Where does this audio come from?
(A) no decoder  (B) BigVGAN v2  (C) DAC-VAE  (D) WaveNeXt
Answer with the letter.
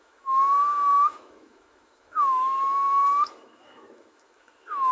C